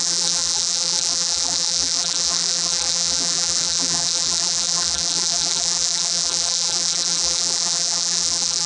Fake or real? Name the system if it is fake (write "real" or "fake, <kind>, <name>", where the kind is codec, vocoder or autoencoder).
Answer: fake, vocoder, BigVGAN v2